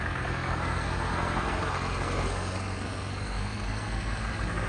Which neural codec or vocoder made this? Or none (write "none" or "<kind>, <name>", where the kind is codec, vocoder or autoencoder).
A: codec, SNAC